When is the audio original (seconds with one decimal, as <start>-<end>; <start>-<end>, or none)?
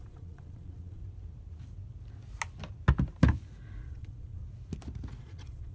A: 1.0-3.8; 4.4-5.2